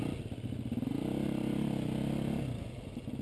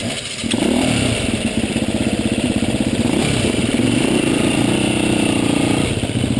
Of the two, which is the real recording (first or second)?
first